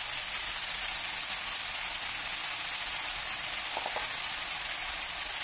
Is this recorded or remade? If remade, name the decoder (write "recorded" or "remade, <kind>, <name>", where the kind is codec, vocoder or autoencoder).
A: recorded